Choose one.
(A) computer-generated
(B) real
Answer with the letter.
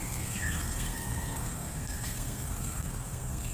A